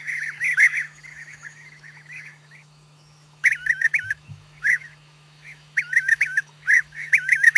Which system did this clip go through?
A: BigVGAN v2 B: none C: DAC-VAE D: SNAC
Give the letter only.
C